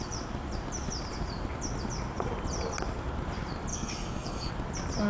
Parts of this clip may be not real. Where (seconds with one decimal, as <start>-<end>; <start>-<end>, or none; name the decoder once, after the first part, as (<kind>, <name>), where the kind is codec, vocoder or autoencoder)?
3.7-4.5 (codec, DAC)